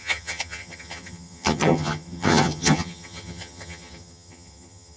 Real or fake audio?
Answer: fake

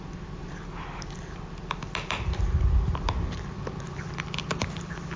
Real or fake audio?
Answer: real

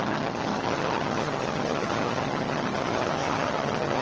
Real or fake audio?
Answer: fake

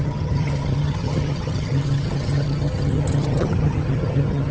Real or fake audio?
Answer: fake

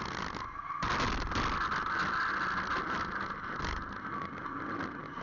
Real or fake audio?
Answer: real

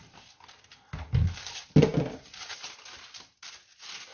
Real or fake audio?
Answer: real